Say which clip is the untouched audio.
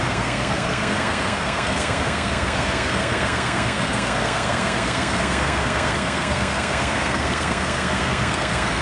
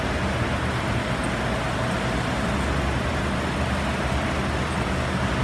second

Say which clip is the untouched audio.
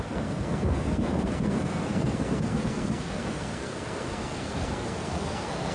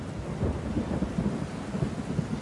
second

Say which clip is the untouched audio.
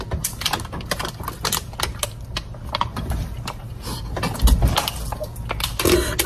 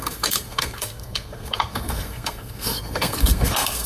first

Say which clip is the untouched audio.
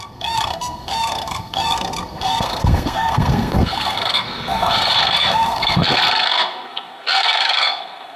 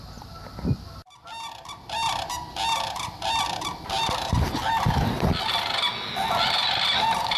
second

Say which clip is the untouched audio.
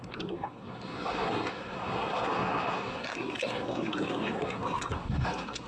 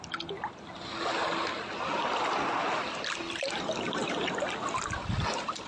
second